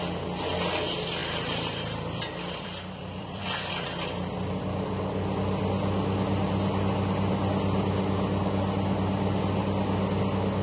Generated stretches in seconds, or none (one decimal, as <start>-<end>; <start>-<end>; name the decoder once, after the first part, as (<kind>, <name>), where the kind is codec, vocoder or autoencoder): 1.2-3.7 (vocoder, BigVGAN v2)